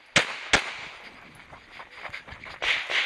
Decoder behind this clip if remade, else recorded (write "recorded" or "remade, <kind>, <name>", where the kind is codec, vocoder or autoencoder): recorded